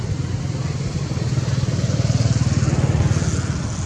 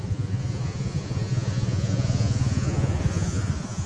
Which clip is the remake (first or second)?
second